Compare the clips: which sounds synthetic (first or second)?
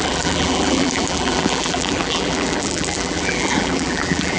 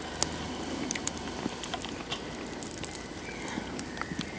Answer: first